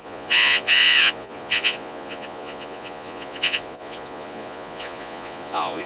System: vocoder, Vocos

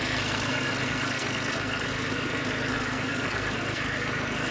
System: codec, SNAC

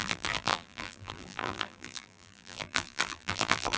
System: vocoder, BigVGAN v2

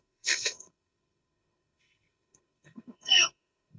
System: codec, SNAC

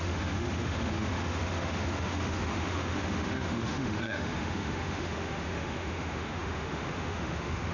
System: autoencoder, DAC-VAE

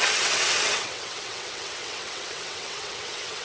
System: vocoder, WaveNeXt